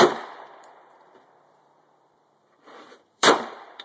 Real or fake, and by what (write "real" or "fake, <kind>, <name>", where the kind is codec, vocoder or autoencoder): fake, vocoder, BigVGAN v2